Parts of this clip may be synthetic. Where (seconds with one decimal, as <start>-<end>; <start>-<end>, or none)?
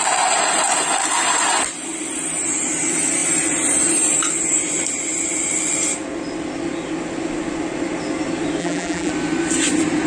8.6-9.1